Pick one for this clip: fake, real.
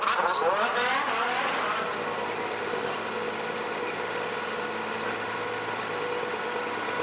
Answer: real